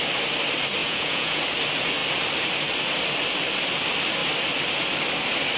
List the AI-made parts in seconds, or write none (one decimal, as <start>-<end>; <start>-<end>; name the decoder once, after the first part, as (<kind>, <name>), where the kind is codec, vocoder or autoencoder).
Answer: 0.8-1.4 (vocoder, Vocos)